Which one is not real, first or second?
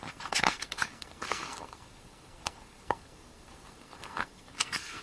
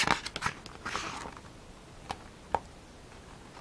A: first